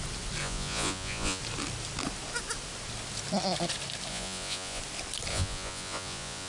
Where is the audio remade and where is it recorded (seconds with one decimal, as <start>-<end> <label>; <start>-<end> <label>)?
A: 0.0-0.4 recorded; 0.4-1.4 remade; 1.4-4.1 recorded; 4.1-4.8 remade; 4.8-5.3 recorded; 5.3-6.5 remade